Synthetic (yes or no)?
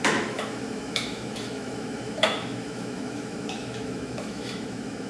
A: yes